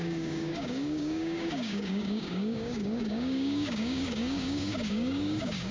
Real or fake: fake